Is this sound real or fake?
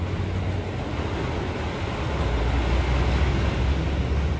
real